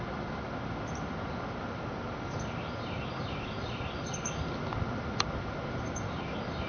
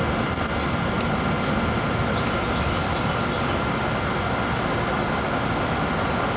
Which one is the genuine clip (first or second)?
second